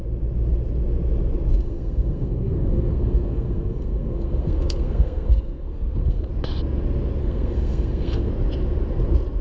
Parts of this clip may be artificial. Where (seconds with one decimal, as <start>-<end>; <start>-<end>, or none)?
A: 1.5-6.3; 7.2-8.3